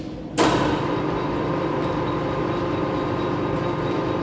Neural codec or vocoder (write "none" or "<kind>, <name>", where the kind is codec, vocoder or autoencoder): none